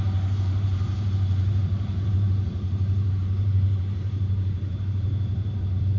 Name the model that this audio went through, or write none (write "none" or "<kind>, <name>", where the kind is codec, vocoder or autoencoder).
vocoder, BigVGAN v2